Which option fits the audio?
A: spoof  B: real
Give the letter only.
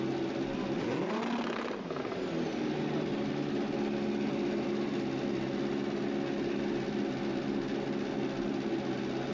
B